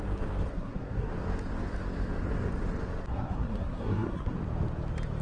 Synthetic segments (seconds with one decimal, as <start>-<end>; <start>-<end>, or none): 0.5-1.1; 3.1-4.3